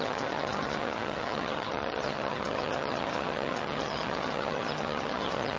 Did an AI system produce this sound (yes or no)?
yes